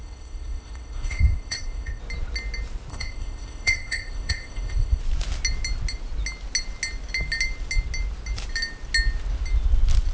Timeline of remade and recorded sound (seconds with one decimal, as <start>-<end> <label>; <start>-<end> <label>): 0.0-2.0 remade; 2.0-2.9 recorded; 2.9-5.0 remade; 5.0-10.1 recorded